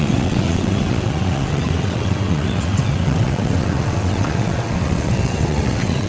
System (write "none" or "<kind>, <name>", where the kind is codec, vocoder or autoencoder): vocoder, WaveNeXt